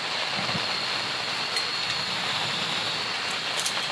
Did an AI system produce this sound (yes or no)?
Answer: no